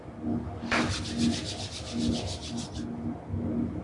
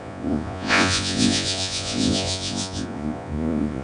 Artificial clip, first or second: second